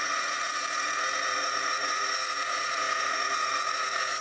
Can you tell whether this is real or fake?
fake